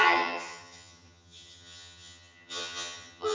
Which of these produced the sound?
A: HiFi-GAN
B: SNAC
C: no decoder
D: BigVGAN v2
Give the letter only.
A